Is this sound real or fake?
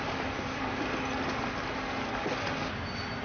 real